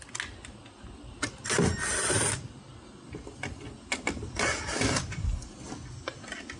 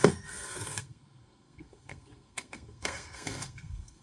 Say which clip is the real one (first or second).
first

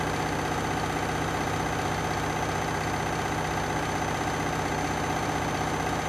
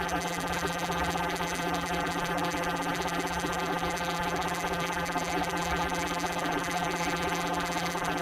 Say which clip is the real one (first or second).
first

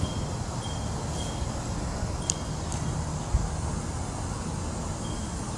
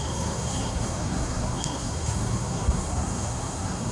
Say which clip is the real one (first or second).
first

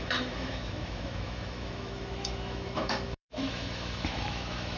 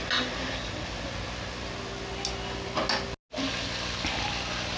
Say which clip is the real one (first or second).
second